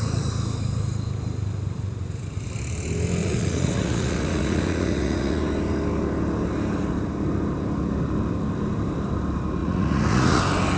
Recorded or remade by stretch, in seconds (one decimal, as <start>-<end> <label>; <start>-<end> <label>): 0.0-3.2 recorded; 3.2-5.4 remade; 5.4-9.6 recorded; 9.6-10.4 remade; 10.4-10.8 recorded

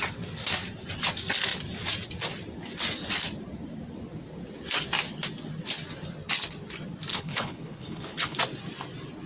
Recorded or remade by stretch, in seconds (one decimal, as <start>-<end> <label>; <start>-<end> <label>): 0.0-7.1 recorded; 7.1-8.4 remade; 8.4-9.3 recorded